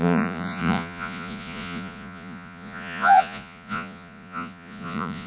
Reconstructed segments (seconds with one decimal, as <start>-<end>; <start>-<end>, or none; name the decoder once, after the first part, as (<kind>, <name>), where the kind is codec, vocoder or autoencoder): 0.0-5.3 (vocoder, Vocos)